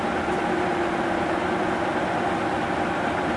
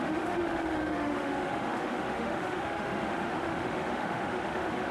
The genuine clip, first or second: first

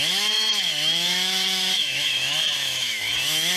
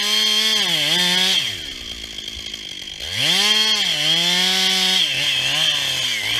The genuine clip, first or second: second